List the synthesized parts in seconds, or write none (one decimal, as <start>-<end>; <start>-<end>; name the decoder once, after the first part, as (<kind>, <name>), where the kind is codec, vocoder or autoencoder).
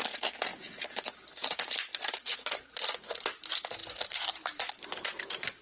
0.5-3.1 (vocoder, BigVGAN v2); 3.8-4.7